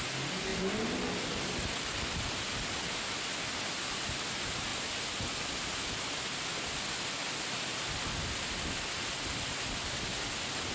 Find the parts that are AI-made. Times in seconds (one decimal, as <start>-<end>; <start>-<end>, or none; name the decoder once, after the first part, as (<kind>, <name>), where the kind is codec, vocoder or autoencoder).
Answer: none